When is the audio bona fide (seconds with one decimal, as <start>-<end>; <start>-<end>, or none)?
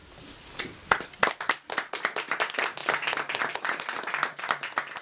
1.3-5.0